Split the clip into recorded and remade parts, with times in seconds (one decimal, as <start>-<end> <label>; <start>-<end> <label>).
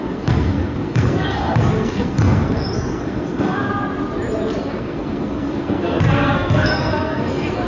0.0-3.7 remade; 3.7-4.6 recorded; 4.6-7.7 remade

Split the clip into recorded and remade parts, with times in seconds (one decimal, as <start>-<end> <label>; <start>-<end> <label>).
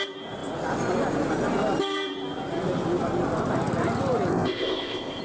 0.0-4.3 recorded; 4.3-5.2 remade